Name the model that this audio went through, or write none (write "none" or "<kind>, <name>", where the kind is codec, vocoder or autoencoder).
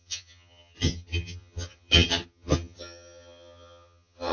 vocoder, HiFi-GAN